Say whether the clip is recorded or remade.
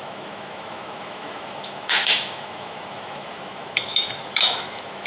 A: remade